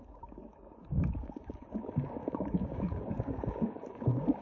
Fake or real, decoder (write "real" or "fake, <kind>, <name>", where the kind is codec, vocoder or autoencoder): fake, codec, DAC